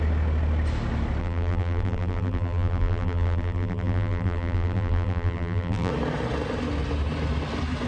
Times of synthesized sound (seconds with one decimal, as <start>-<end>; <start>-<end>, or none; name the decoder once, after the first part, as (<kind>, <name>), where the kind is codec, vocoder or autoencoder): 1.2-5.9 (vocoder, BigVGAN v2)